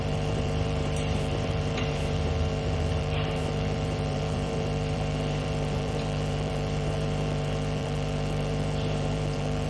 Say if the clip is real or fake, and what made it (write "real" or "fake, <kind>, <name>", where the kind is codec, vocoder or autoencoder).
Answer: fake, vocoder, BigVGAN v2